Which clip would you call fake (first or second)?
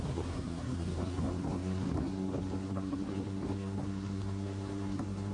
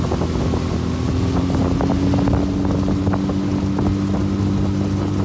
first